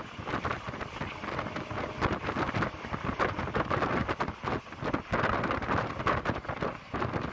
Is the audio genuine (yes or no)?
yes